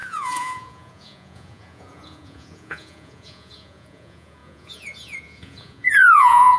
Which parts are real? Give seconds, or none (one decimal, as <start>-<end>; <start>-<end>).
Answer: none